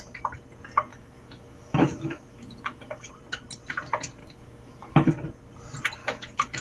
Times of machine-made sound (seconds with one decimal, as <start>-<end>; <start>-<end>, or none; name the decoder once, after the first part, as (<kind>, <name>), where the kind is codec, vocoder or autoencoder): 0.9-3.1 (autoencoder, DAC-VAE); 4.2-5.1; 6.0-6.6